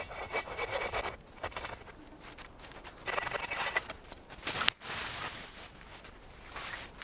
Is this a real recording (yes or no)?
yes